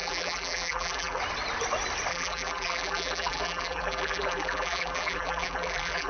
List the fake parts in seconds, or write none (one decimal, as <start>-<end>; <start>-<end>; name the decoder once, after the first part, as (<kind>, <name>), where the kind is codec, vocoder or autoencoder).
0.0-1.2 (vocoder, BigVGAN v2); 2.1-6.1